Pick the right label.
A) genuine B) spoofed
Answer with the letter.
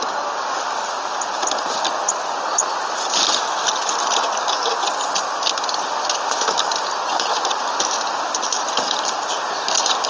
A